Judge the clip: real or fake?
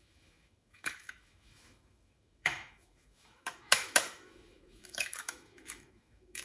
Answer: fake